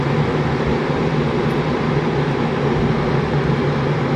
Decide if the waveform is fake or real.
real